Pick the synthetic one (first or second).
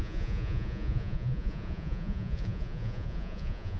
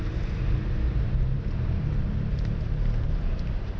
first